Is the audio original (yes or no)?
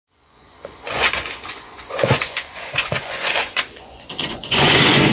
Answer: no